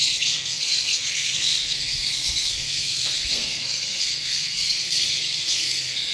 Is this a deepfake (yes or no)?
yes